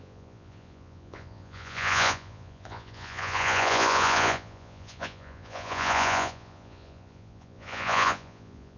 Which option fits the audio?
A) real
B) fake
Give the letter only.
B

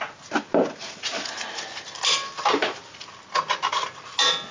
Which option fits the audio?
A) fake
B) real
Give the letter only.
B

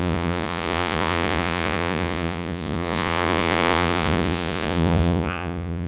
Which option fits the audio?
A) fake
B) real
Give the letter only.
A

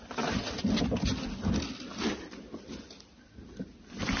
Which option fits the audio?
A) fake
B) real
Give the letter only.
B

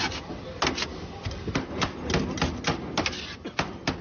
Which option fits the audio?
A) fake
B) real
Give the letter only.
B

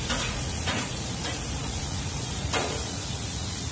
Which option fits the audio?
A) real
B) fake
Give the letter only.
B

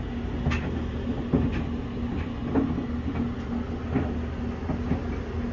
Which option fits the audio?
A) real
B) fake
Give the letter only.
A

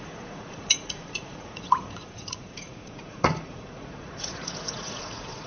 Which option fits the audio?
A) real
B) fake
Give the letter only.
B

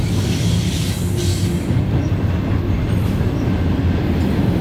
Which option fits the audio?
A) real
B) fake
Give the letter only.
A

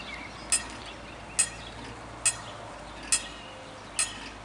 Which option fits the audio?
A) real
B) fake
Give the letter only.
A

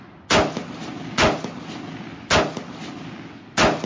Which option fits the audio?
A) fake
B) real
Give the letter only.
B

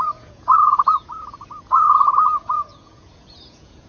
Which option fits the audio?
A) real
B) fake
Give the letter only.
B